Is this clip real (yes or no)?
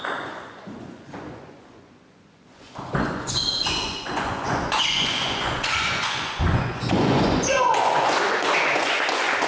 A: no